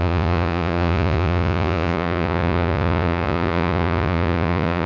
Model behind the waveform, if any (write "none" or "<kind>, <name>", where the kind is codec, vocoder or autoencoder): vocoder, Vocos